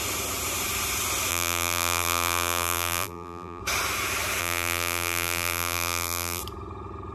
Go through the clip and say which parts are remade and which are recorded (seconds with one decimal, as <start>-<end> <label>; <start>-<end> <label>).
0.0-1.3 recorded; 1.3-3.6 remade; 3.6-4.4 recorded; 4.4-6.4 remade; 6.4-7.1 recorded